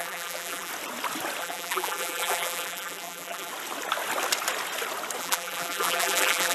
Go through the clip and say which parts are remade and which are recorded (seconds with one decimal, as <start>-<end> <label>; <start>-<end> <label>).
0.0-0.7 remade; 0.7-1.4 recorded; 1.4-3.5 remade; 3.5-5.2 recorded; 5.2-6.5 remade